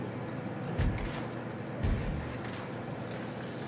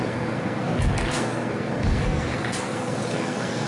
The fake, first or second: second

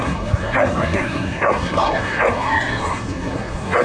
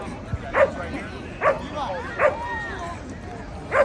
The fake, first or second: first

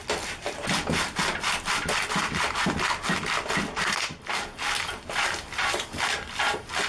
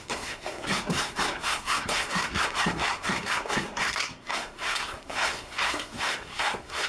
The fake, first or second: second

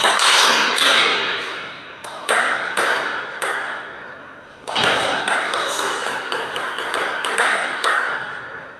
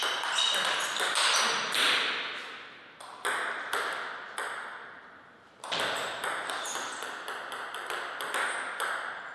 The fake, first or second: first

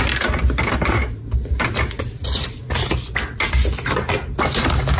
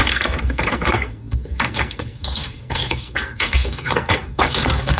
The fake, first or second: second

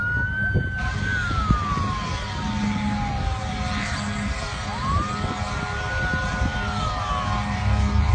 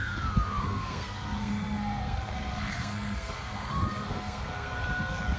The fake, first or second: second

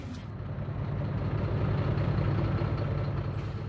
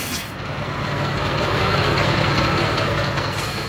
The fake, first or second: second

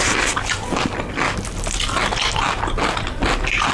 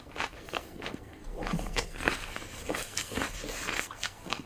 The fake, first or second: second